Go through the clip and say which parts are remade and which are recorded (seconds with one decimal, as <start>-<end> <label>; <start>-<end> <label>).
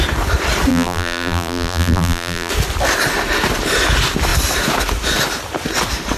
0.0-0.7 recorded; 0.7-2.5 remade; 2.5-6.2 recorded